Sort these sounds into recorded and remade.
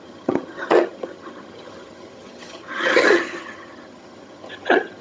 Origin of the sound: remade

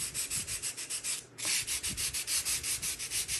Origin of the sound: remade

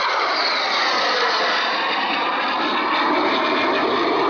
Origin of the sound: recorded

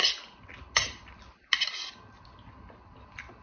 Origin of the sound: recorded